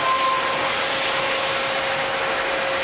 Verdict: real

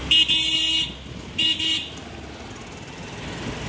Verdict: real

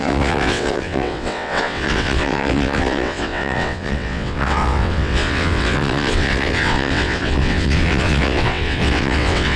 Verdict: fake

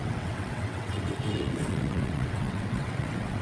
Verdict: fake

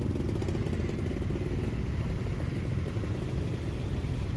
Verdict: real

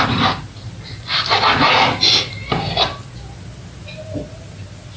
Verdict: real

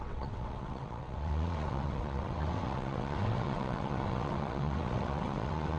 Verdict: fake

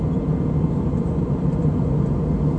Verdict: real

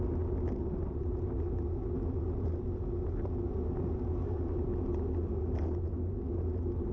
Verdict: real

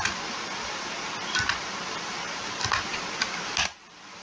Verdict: real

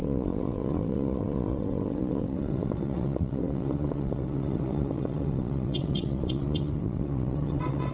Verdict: fake